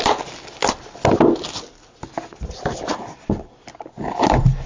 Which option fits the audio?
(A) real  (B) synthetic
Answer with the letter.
A